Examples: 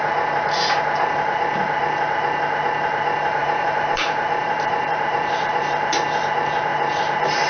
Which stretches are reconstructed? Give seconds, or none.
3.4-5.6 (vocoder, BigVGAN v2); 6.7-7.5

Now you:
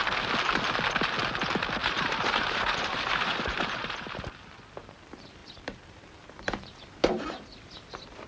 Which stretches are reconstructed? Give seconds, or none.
1.8-4.3 (vocoder, BigVGAN v2); 5.4-8.3